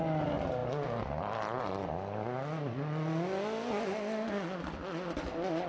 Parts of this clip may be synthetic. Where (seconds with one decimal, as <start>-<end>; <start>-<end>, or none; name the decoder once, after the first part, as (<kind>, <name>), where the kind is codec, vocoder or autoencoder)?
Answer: none